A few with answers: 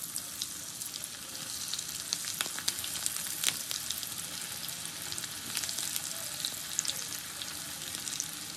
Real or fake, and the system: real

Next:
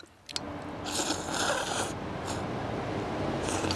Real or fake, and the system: real